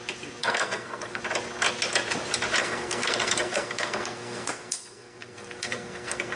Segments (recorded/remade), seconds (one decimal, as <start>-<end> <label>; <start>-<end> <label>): 0.0-0.4 recorded; 0.4-1.2 remade; 1.2-2.6 recorded; 2.6-6.4 remade